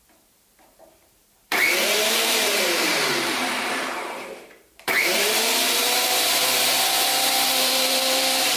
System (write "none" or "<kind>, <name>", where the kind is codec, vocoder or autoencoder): vocoder, BigVGAN v2